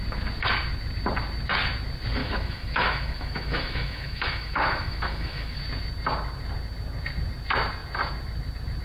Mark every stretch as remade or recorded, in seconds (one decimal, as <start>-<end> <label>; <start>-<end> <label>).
0.0-2.2 recorded; 2.2-5.6 remade; 5.6-8.8 recorded